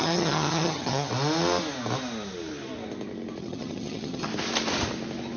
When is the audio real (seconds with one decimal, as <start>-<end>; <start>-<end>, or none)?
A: 1.1-3.4; 4.3-5.4